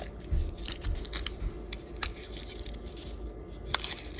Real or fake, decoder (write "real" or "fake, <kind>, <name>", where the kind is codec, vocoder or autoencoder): real